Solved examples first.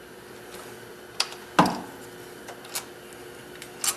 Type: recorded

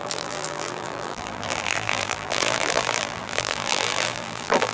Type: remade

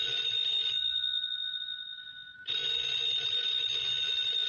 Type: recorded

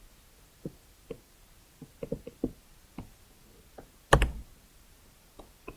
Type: recorded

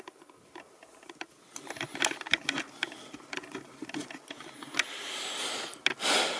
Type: recorded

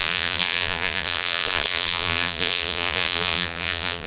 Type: remade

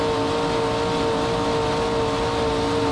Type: recorded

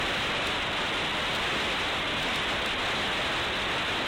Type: recorded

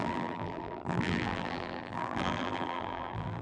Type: remade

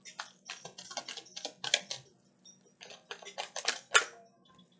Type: recorded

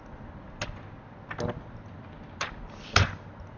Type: recorded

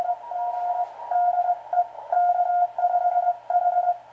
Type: recorded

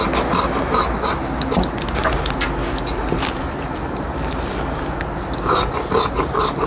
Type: recorded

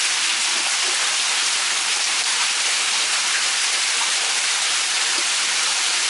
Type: remade